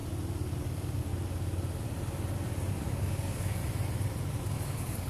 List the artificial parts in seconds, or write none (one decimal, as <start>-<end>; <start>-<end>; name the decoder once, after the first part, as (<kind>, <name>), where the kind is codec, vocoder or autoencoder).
0.6-1.1 (codec, DAC); 2.7-3.6; 4.4-5.1